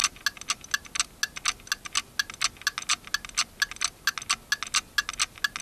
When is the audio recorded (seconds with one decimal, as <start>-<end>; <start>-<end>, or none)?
0.0-5.6